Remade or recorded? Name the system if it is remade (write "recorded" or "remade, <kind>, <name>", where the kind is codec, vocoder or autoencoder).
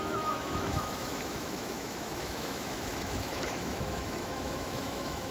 remade, autoencoder, DAC-VAE